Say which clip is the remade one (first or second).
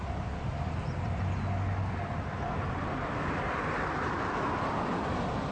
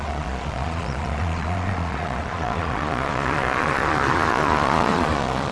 second